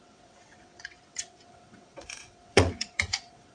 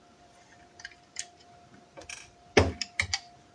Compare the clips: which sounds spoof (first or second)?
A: first